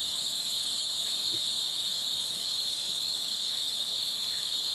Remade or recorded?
remade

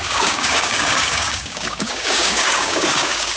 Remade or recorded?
remade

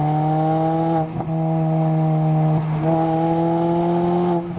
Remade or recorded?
recorded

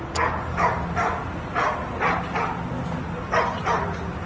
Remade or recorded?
recorded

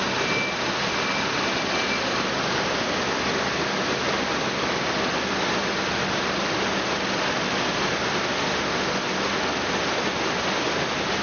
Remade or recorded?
recorded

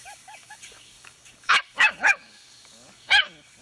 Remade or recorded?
remade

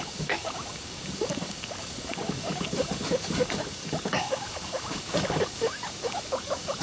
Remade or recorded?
remade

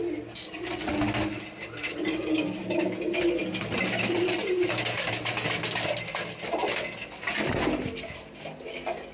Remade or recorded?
recorded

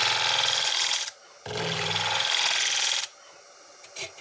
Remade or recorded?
recorded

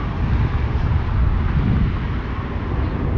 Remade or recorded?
recorded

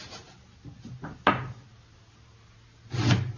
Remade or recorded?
recorded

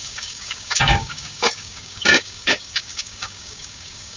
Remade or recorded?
remade